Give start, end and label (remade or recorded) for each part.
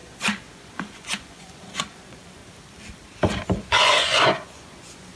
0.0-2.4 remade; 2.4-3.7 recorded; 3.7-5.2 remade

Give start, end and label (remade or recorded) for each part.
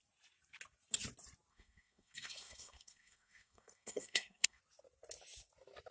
0.0-1.5 recorded; 1.5-4.6 remade; 4.6-5.9 recorded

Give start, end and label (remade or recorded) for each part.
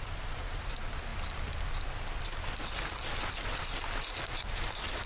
0.0-5.1 recorded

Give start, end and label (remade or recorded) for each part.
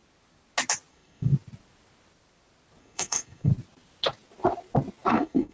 0.0-0.9 recorded; 0.9-1.3 remade; 1.3-2.8 recorded; 2.8-3.5 remade; 3.5-5.1 recorded; 5.1-5.5 remade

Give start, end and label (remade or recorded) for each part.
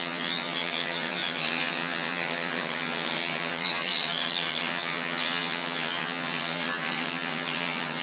0.0-8.0 remade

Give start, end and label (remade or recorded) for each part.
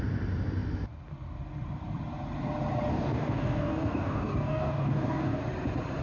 0.0-2.9 recorded; 2.9-5.4 remade; 5.4-6.0 recorded